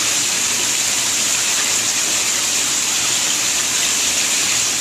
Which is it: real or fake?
real